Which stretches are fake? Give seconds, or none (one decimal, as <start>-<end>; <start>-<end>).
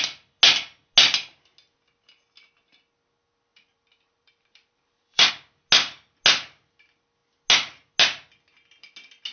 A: 3.5-5.3